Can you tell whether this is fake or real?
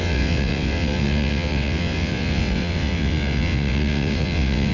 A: fake